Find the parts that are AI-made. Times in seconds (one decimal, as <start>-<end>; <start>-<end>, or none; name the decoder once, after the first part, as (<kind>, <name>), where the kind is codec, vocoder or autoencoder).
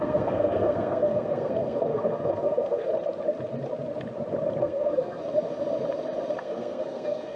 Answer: 0.0-2.9 (codec, SNAC); 4.6-5.2; 6.4-7.4